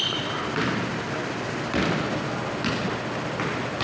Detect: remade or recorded recorded